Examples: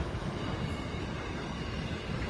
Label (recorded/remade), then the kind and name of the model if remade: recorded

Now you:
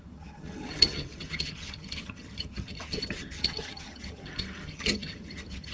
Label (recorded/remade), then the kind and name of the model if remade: remade, vocoder, HiFi-GAN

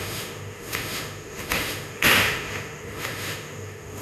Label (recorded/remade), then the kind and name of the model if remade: remade, autoencoder, DAC-VAE